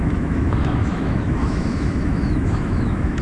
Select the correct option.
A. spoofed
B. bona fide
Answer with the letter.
A